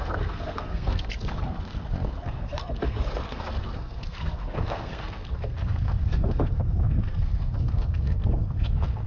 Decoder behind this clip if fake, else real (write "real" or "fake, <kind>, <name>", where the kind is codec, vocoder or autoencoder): fake, codec, SNAC